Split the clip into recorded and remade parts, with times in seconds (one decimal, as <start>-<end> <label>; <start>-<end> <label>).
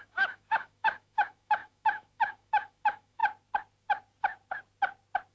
0.0-3.2 remade; 3.2-5.3 recorded